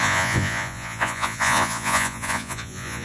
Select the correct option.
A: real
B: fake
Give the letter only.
B